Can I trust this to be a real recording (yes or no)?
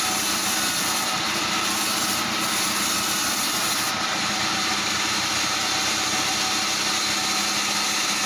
yes